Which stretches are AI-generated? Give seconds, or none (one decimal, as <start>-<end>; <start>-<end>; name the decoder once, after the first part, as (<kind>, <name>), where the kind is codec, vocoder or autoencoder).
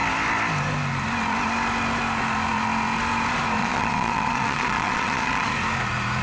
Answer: 3.6-5.5 (vocoder, Vocos)